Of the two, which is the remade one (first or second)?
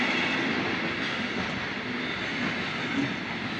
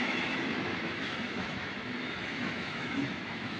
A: second